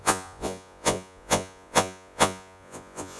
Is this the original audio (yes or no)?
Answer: no